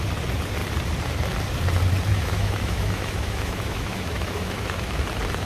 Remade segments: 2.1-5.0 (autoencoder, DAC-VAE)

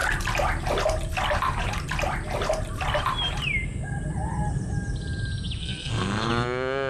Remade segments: 5.6-6.3 (codec, SNAC)

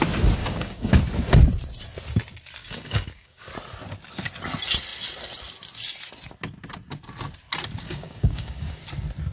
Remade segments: 0.4-1.0 (codec, DAC); 2.6-3.5; 7.8-8.8

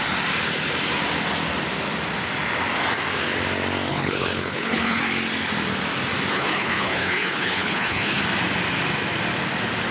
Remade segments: 3.9-5.0 (codec, HILCodec); 6.3-8.2

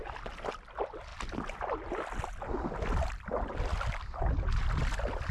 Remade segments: none